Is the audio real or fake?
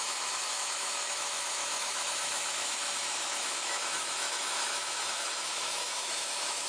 fake